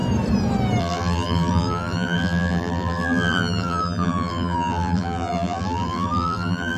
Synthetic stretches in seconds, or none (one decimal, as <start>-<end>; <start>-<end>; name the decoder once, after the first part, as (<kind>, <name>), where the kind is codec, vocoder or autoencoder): 0.8-6.8 (vocoder, BigVGAN v2)